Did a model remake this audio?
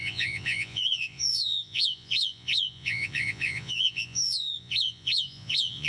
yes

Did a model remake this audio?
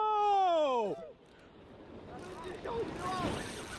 no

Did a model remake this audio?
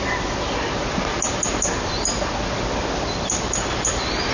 no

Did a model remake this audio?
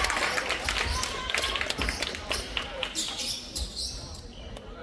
no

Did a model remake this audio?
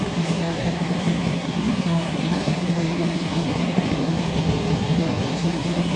yes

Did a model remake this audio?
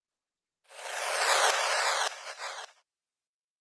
no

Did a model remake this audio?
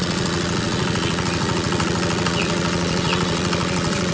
yes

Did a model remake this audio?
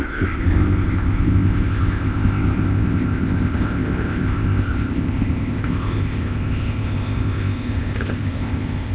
yes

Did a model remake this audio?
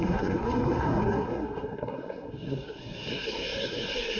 yes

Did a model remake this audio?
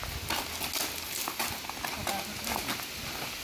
no